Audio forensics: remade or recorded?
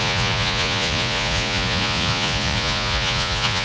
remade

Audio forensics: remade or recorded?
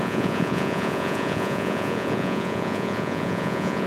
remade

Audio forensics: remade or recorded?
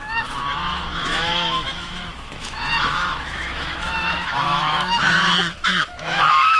remade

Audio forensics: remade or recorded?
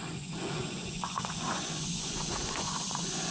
remade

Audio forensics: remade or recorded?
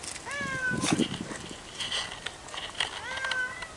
recorded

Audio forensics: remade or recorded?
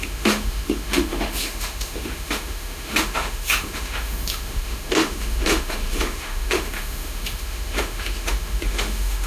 remade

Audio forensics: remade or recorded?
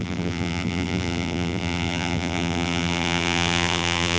remade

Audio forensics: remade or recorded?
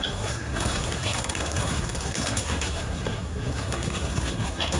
remade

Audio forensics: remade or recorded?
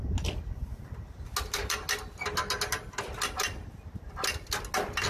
recorded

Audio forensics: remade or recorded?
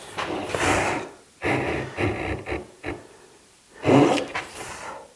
recorded